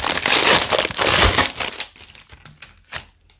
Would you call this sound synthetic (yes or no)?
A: no